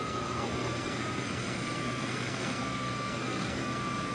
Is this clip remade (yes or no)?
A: yes